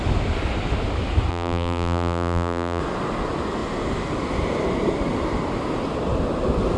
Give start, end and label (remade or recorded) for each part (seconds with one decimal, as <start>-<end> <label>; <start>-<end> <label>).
0.0-1.3 recorded; 1.3-2.8 remade; 2.8-6.8 recorded